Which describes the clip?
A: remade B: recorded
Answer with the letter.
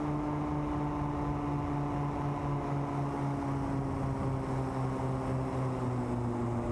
B